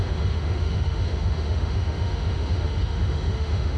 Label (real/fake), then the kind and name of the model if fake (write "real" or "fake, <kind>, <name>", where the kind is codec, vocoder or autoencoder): fake, autoencoder, DAC-VAE